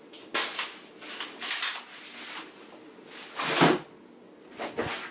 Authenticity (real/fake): real